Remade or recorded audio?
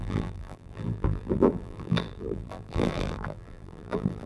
remade